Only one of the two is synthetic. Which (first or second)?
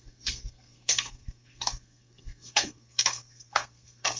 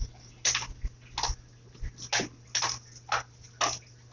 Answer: first